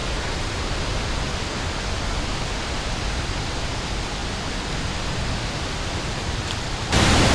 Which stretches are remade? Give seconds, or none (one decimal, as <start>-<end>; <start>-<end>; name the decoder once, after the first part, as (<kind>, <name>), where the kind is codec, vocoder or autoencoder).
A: 0.0-0.6 (vocoder, BigVGAN v2)